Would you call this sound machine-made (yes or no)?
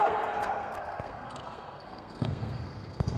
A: yes